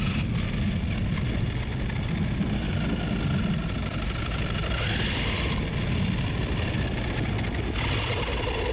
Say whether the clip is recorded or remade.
recorded